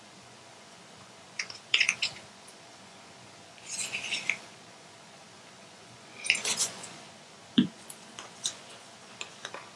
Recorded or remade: remade